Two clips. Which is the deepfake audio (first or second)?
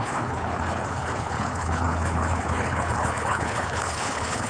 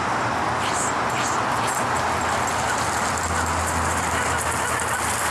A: first